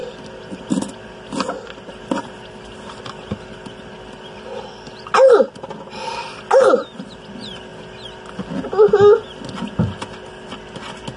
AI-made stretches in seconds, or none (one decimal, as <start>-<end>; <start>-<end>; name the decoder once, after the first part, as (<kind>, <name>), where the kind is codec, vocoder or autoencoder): none